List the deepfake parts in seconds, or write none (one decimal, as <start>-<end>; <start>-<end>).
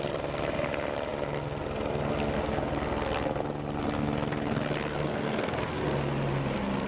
none